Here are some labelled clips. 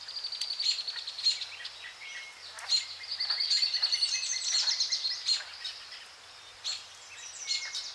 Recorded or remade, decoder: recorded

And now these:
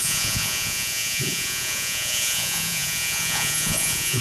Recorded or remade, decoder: remade, vocoder, Vocos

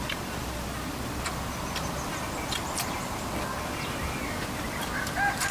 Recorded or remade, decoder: recorded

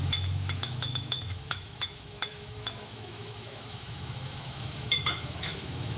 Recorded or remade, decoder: remade, autoencoder, DAC-VAE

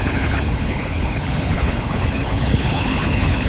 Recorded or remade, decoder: remade, codec, HILCodec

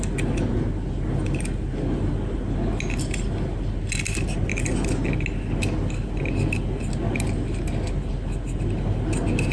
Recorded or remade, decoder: recorded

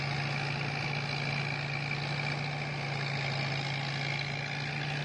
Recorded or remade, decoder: recorded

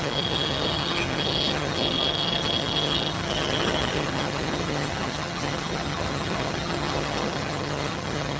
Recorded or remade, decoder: remade, vocoder, HiFi-GAN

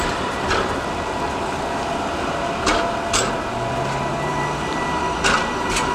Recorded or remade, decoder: recorded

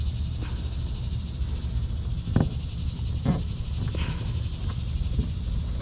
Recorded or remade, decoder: recorded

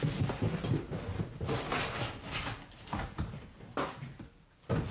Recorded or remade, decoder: recorded